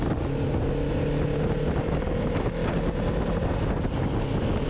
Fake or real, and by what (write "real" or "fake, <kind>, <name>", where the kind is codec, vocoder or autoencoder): real